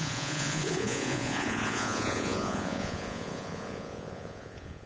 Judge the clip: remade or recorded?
remade